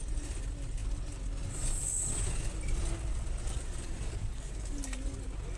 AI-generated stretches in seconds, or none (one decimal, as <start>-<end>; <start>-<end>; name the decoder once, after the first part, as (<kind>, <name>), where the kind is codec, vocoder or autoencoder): none